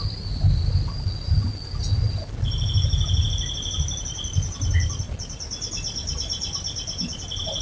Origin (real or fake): fake